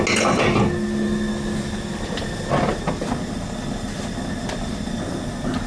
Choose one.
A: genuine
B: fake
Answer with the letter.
A